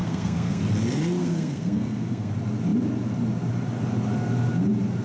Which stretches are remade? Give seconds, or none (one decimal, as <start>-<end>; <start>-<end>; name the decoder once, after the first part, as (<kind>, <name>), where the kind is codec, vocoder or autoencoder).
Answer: 0.0-0.6 (codec, SNAC); 1.2-2.3